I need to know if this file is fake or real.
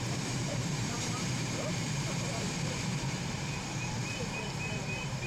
fake